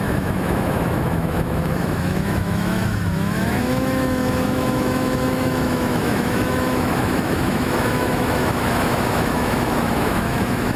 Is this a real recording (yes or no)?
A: no